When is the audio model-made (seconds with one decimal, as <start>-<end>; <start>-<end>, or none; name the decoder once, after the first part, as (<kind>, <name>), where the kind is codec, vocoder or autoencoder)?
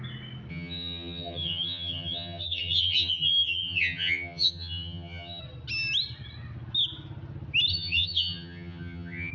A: 0.5-5.4 (vocoder, HiFi-GAN); 7.7-9.3